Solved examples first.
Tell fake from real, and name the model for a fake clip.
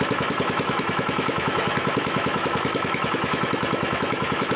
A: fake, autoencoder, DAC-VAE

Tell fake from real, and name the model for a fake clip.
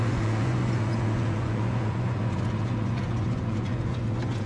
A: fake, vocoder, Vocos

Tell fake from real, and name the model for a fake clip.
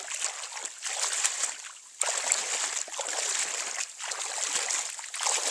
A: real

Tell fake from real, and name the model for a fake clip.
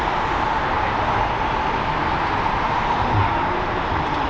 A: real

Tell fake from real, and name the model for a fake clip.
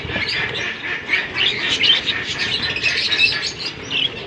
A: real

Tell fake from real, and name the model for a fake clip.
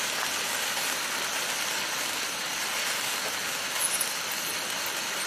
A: real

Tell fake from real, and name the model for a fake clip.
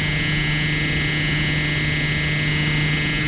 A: real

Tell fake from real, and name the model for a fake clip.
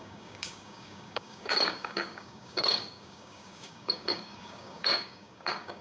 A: fake, codec, DAC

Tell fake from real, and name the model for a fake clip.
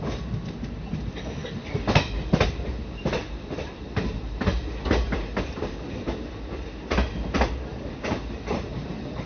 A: real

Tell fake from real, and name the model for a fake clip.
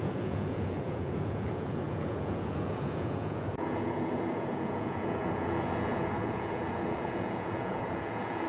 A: fake, vocoder, Vocos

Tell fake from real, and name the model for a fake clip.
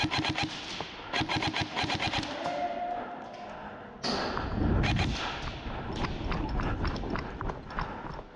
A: real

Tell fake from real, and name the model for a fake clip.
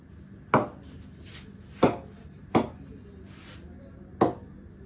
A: real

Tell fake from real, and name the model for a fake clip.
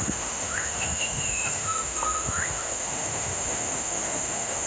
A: fake, autoencoder, DAC-VAE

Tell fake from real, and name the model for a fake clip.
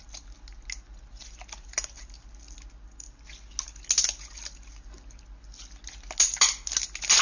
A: real